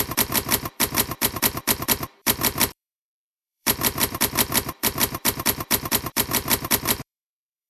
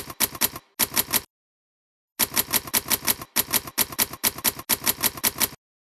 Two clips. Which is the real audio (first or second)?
second